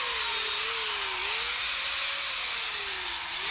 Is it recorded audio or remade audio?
recorded